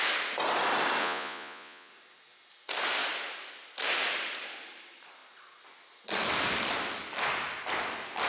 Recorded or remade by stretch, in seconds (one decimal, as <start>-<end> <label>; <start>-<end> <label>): 0.0-1.0 recorded; 1.0-1.9 remade; 1.9-8.3 recorded

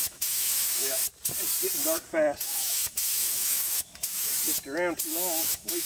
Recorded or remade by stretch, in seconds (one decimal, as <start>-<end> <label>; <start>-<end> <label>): 0.0-1.0 remade; 1.0-2.4 recorded; 2.4-4.3 remade; 4.3-5.1 recorded; 5.1-5.9 remade

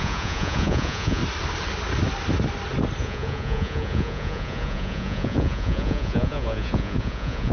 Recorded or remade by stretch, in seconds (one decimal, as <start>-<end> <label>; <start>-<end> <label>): 0.0-1.2 remade; 1.2-3.0 recorded; 3.0-7.5 remade